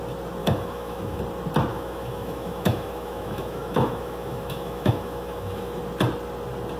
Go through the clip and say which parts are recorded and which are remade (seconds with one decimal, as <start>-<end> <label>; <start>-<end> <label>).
0.0-0.4 recorded; 0.4-1.2 remade; 1.2-1.7 recorded; 1.7-5.8 remade; 5.8-6.8 recorded